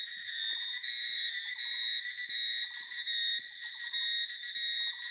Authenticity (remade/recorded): recorded